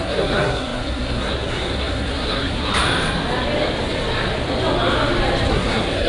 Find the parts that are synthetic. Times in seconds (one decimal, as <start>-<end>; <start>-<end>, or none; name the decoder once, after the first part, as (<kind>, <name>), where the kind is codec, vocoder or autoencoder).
0.0-2.7 (codec, SNAC); 5.5-6.1